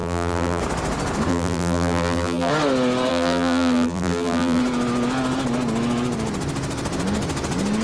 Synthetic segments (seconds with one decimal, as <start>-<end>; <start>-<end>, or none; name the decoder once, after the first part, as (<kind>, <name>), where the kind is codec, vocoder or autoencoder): 0.0-0.6 (vocoder, BigVGAN v2); 1.3-2.5; 3.1-4.6